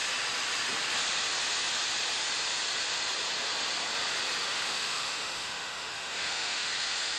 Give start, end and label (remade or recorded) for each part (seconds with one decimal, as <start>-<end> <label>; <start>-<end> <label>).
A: 0.0-4.4 recorded; 4.4-7.2 remade